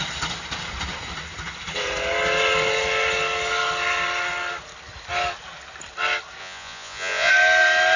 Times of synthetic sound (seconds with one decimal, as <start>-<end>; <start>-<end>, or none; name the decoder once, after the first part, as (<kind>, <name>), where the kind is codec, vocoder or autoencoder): 6.4-7.3 (vocoder, Vocos)